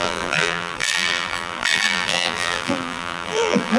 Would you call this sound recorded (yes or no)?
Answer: no